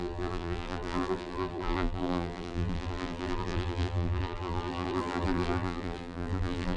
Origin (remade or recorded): remade